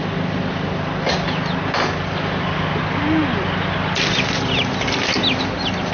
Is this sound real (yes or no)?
yes